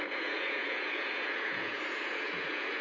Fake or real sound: fake